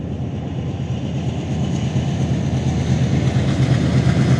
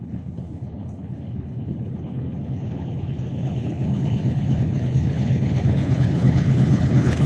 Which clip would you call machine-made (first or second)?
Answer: second